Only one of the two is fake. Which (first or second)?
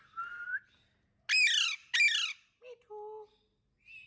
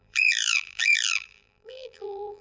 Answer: second